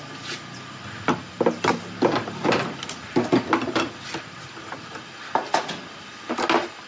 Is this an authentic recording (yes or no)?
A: yes